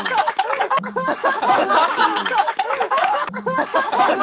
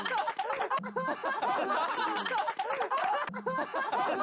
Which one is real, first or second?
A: second